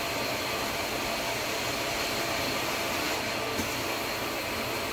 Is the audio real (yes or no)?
yes